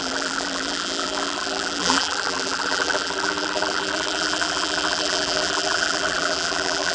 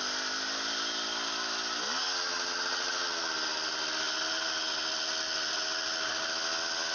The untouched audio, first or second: second